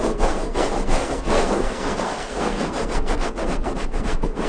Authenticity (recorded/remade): remade